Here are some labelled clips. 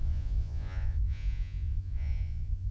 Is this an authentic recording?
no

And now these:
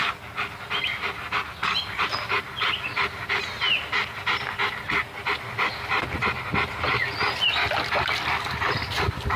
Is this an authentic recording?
yes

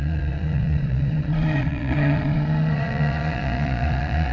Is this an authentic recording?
no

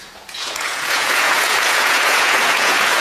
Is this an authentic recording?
no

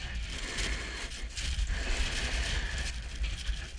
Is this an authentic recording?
yes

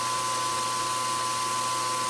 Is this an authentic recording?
yes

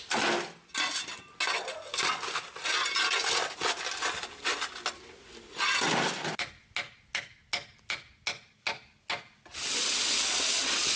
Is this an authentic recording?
yes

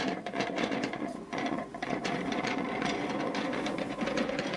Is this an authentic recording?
no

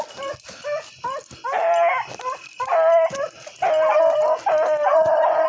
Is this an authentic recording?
yes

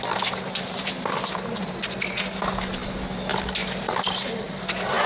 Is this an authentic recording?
yes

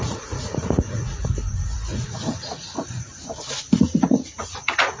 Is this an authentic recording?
no